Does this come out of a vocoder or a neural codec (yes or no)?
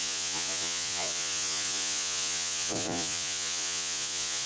yes